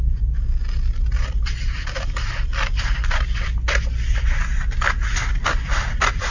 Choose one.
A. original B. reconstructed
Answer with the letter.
A